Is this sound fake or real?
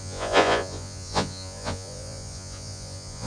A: fake